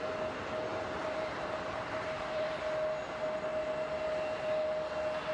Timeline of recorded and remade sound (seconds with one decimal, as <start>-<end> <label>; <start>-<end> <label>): 0.0-0.7 recorded; 0.7-2.6 remade; 2.6-5.3 recorded